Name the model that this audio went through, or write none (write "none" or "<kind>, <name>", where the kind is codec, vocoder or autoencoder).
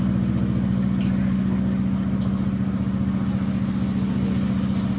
none